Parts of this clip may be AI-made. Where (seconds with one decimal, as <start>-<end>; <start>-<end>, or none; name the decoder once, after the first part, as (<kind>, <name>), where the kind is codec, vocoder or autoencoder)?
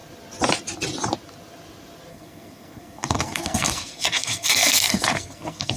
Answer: 2.1-5.8 (codec, SNAC)